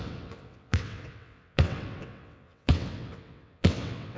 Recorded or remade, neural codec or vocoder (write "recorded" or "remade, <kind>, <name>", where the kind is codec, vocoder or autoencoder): remade, vocoder, WaveNeXt